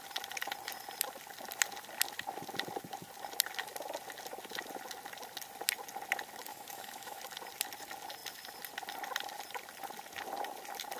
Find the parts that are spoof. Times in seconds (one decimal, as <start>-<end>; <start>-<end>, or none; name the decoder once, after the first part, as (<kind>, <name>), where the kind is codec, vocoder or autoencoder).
6.5-7.2 (autoencoder, DAC-VAE)